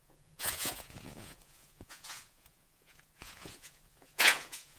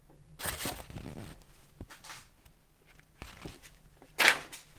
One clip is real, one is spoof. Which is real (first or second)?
second